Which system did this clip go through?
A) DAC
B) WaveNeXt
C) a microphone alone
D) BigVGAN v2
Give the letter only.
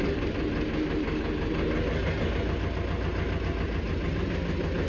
C